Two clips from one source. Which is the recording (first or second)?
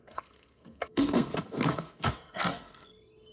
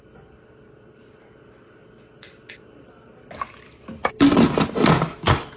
second